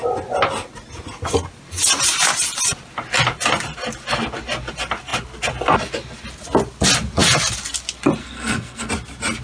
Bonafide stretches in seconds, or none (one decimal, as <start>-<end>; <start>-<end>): 0.0-8.2; 8.9-9.4